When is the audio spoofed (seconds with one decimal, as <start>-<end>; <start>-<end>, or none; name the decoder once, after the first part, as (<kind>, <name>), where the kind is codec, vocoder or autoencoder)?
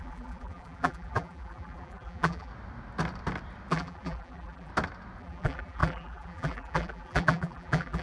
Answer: 0.0-2.5 (vocoder, BigVGAN v2); 3.7-4.7; 5.2-8.0